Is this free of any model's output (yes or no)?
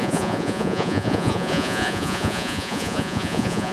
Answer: no